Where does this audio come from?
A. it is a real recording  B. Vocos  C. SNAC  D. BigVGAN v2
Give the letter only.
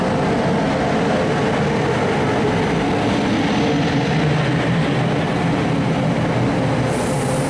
A